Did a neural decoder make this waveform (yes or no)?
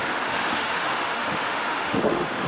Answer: yes